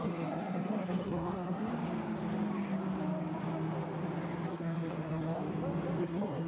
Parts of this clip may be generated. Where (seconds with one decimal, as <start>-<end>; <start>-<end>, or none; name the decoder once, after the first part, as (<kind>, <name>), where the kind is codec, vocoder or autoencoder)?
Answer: 0.0-1.7 (codec, SNAC); 4.5-5.4; 6.0-6.5